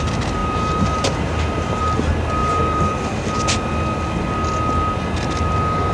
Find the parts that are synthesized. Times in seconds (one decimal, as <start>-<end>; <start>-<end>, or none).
0.4-1.8; 2.4-2.9